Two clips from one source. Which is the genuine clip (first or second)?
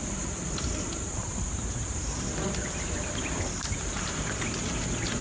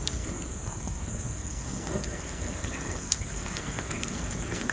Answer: first